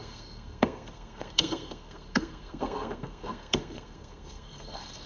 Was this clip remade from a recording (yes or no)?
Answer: yes